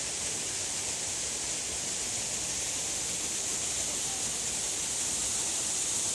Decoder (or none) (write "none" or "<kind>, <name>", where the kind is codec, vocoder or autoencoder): none